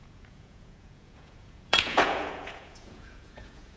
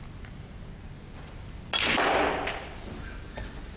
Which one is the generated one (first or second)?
first